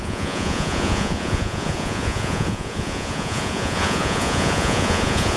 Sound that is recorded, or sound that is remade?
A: remade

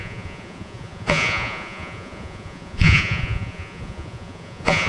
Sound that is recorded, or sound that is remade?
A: remade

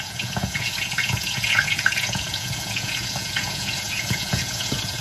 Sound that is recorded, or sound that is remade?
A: remade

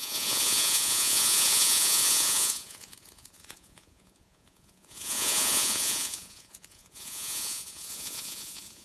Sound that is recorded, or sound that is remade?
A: remade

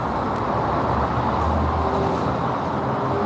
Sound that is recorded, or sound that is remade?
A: recorded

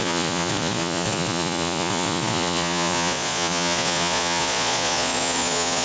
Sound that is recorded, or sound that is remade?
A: remade